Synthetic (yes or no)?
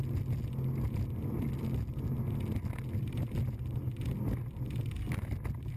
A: no